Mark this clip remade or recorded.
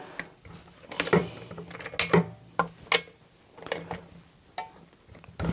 recorded